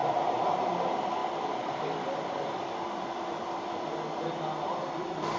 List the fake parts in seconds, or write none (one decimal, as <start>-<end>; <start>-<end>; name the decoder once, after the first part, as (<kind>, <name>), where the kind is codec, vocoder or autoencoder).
0.0-0.5 (vocoder, BigVGAN v2); 1.2-4.4